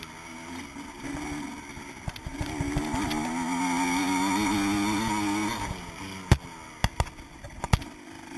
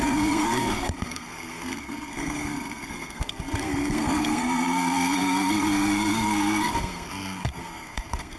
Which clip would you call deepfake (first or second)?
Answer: second